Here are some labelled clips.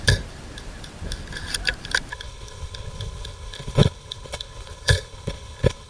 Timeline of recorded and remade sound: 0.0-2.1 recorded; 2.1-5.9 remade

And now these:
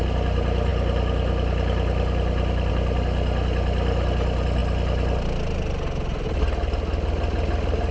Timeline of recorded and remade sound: 0.0-7.9 recorded

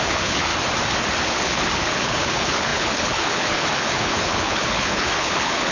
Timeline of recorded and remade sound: 0.0-0.5 remade; 0.5-1.2 recorded; 1.2-5.7 remade

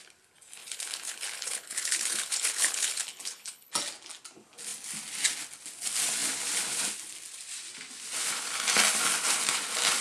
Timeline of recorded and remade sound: 0.0-0.6 recorded; 0.6-3.7 remade; 3.7-10.0 recorded

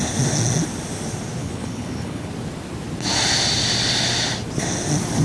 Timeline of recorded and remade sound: 0.0-1.4 recorded; 1.4-2.3 remade; 2.3-5.2 recorded

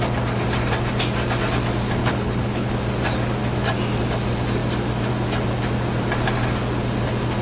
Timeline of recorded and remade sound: 0.0-2.0 recorded; 2.0-2.7 remade; 2.7-7.4 recorded

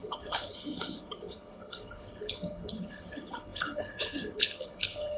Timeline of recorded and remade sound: 0.0-5.2 remade

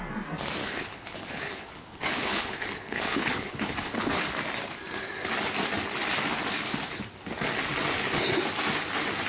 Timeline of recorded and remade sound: 0.0-0.6 recorded; 0.6-4.2 remade; 4.2-9.3 recorded